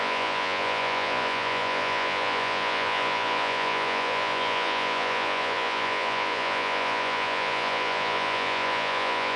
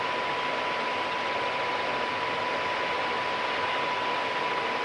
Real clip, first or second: second